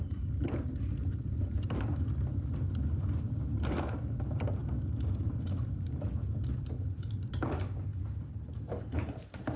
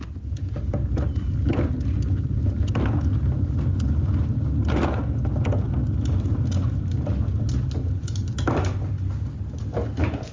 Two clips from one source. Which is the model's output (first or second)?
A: first